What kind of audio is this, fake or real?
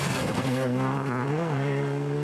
fake